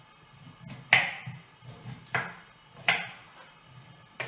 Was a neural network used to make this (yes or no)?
no